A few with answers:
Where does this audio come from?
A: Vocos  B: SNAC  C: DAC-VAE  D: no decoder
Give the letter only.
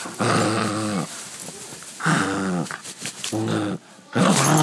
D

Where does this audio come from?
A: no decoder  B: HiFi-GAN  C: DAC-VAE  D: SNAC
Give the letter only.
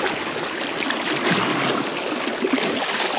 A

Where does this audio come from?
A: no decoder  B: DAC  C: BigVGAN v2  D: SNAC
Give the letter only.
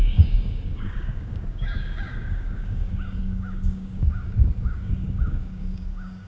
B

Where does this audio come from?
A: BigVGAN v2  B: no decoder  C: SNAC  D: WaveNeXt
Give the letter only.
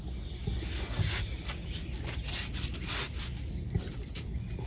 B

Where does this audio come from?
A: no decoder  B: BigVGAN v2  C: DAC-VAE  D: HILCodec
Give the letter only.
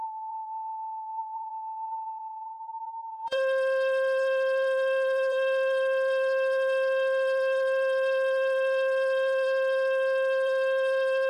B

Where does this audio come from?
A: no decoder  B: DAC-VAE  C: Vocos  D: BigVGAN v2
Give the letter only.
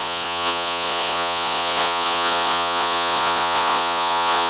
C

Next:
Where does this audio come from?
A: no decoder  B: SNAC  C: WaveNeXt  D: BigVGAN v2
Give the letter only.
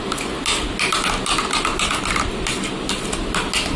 A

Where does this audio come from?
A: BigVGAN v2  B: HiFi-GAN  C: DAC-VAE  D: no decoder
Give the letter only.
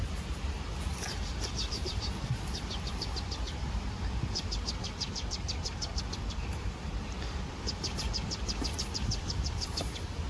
A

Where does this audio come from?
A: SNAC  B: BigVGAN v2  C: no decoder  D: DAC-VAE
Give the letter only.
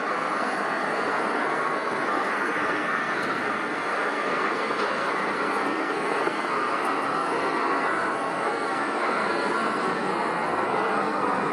A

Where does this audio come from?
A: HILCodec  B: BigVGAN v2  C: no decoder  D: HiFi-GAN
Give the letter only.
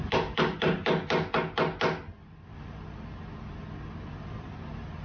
C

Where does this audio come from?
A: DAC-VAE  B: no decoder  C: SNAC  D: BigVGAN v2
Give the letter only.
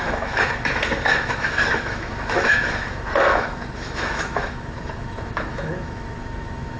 A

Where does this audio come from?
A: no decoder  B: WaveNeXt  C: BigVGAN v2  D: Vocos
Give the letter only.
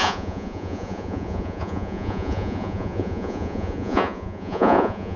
D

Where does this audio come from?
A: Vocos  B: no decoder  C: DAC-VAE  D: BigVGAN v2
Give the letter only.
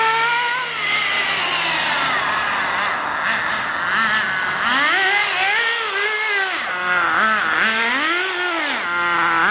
B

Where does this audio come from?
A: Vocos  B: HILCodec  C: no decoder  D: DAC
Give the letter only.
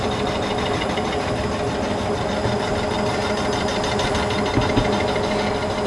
C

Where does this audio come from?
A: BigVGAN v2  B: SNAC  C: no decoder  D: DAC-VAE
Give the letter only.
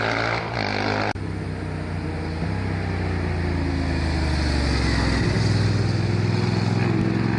C